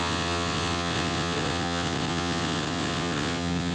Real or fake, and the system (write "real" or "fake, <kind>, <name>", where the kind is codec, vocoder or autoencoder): fake, vocoder, WaveNeXt